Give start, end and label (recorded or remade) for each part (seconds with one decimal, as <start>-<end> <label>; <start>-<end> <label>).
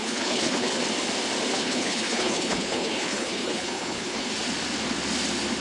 0.0-0.8 remade; 0.8-1.5 recorded; 1.5-4.3 remade; 4.3-5.6 recorded